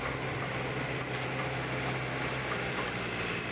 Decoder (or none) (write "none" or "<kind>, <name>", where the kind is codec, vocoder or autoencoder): none